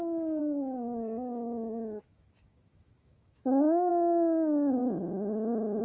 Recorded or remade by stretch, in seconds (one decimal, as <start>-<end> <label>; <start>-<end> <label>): 0.0-0.4 recorded; 0.4-3.9 remade; 3.9-4.8 recorded; 4.8-5.8 remade